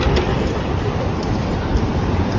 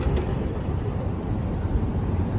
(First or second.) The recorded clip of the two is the second